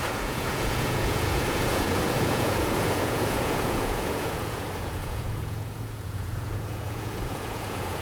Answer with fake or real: fake